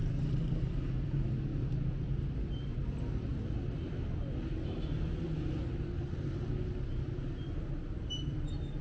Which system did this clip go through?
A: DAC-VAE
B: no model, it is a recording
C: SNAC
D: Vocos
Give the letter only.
B